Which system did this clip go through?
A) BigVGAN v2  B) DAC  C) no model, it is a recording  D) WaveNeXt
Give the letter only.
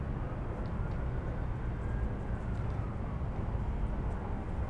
C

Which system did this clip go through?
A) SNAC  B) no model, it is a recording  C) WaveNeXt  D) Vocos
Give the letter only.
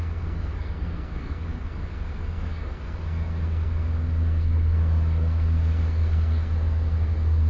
A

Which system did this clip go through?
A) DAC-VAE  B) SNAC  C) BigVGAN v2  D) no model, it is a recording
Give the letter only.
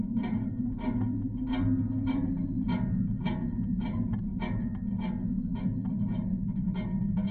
D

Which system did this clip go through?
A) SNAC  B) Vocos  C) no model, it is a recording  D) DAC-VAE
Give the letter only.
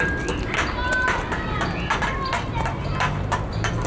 C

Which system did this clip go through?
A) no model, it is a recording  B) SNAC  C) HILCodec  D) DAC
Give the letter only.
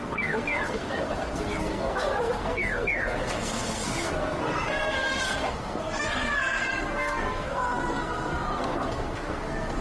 B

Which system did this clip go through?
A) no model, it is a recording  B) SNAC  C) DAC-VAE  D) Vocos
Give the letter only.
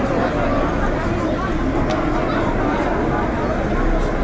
A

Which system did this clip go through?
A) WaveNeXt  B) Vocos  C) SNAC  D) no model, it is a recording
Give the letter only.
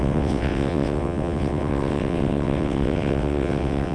A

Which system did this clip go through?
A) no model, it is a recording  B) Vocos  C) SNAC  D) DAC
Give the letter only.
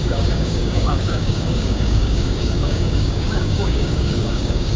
D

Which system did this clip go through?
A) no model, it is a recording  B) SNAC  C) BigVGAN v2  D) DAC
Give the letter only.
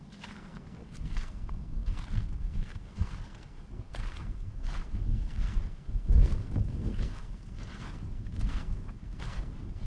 B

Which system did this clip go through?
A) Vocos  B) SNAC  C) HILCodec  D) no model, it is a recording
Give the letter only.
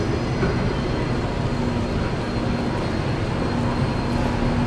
D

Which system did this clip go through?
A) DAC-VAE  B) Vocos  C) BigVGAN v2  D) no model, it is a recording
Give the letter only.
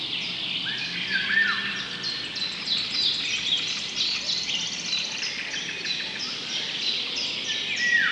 D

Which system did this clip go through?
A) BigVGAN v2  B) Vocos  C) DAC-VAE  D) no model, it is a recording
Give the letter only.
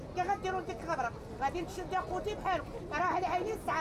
D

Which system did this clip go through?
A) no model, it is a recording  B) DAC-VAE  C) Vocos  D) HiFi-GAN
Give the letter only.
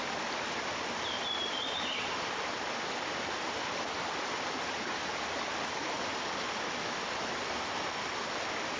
A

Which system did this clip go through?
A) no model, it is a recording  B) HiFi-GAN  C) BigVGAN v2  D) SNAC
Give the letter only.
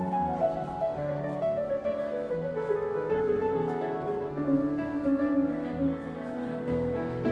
D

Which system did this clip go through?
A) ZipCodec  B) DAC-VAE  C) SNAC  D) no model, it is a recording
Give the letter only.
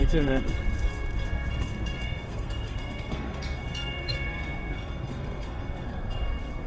C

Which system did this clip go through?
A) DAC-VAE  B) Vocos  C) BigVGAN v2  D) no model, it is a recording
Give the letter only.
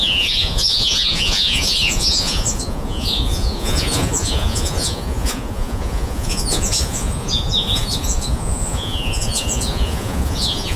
B